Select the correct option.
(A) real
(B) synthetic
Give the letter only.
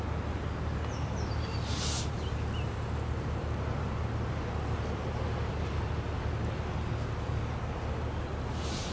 A